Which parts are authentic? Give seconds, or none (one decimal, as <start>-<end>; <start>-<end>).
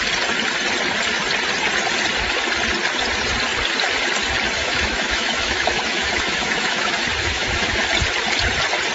0.0-4.6; 7.8-8.9